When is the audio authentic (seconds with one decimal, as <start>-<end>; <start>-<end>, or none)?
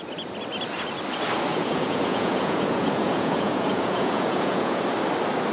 0.0-1.5; 4.8-5.5